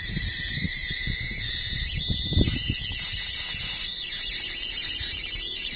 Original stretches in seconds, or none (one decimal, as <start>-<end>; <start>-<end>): 0.8-4.3